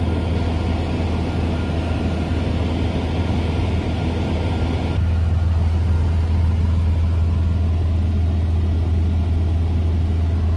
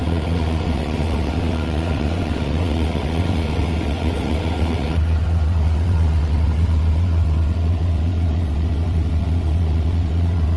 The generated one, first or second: second